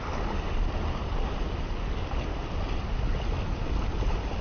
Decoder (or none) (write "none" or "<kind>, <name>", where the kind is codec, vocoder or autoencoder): none